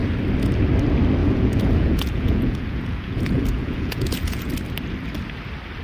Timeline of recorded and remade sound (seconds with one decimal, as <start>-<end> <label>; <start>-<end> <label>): 0.0-1.2 recorded; 1.2-4.5 remade; 4.5-5.8 recorded